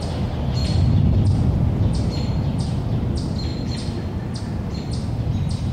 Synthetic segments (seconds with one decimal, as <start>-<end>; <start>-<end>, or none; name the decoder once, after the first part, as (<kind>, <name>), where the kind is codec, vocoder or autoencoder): 0.0-3.5 (vocoder, BigVGAN v2); 4.4-5.7